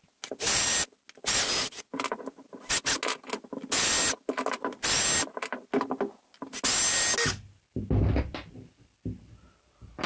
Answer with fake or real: real